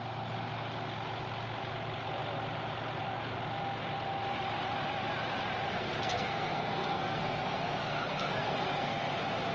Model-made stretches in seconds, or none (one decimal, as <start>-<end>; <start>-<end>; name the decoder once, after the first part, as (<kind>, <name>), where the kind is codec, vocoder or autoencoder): 5.7-9.0 (codec, SNAC)